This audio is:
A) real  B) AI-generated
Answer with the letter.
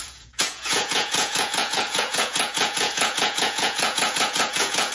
B